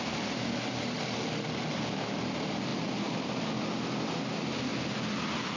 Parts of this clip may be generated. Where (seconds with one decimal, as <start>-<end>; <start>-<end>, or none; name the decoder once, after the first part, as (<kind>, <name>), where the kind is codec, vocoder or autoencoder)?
none

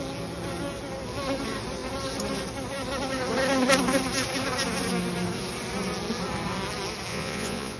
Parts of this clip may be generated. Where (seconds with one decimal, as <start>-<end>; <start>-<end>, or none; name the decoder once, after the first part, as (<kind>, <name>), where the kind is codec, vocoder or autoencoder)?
7.1-7.8 (vocoder, Vocos)

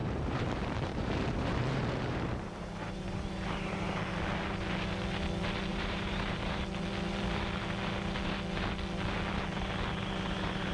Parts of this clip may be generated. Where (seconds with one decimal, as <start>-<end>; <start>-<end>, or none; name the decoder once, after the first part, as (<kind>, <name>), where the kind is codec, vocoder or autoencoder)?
0.0-4.0 (vocoder, BigVGAN v2); 5.7-6.6

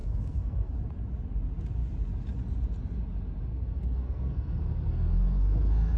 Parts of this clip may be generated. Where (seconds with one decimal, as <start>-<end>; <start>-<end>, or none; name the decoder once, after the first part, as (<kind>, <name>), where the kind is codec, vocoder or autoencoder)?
0.0-0.7 (codec, SNAC); 3.5-6.0

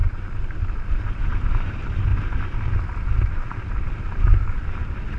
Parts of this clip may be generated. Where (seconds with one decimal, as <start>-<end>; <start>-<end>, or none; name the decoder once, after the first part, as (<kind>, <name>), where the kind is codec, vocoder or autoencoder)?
0.9-2.1 (vocoder, BigVGAN v2)